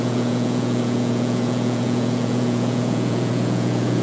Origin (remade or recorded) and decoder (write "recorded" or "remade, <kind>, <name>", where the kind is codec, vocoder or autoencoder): remade, vocoder, Vocos